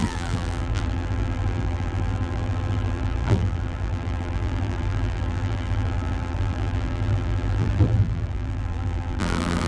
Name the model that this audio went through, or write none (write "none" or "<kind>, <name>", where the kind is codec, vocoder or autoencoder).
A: vocoder, BigVGAN v2